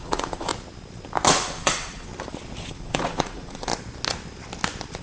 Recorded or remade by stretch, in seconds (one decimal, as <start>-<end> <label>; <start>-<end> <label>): 0.0-0.5 remade; 0.5-1.3 recorded; 1.3-2.1 remade; 2.1-2.6 recorded; 2.6-3.7 remade; 3.7-5.0 recorded

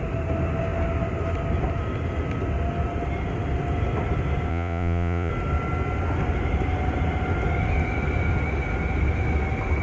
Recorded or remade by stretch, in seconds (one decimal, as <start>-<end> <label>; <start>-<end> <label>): 0.0-4.5 recorded; 4.5-5.3 remade; 5.3-9.8 recorded

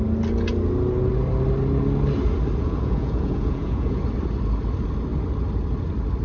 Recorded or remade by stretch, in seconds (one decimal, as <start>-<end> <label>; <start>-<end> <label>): 0.0-2.6 recorded; 2.6-4.0 remade; 4.0-6.2 recorded

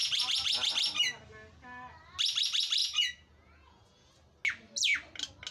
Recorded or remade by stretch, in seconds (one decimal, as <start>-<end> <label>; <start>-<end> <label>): 0.0-0.7 remade; 0.7-2.8 recorded; 2.8-4.1 remade; 4.1-5.5 recorded

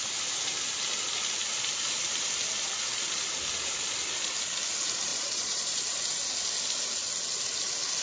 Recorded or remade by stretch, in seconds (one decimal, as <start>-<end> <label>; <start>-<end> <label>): 0.0-5.1 recorded; 5.1-5.8 remade; 5.8-8.0 recorded

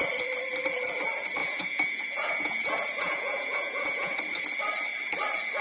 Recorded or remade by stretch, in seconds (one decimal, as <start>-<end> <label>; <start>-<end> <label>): 0.0-1.4 recorded; 1.4-4.2 remade; 4.2-5.6 recorded